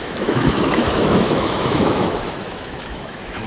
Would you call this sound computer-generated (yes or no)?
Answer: yes